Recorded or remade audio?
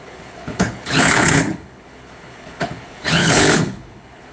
remade